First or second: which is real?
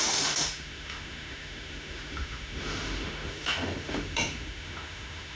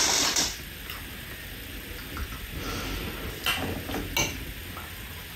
second